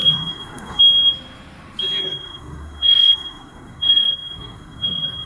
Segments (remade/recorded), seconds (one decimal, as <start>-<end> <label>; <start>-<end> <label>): 0.0-0.8 remade; 0.8-2.0 recorded; 2.0-5.3 remade